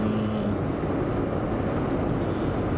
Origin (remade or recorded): recorded